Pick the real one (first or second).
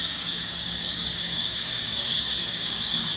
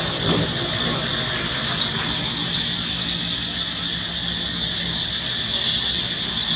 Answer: second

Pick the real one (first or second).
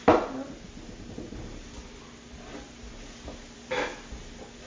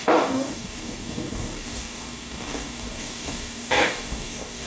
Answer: first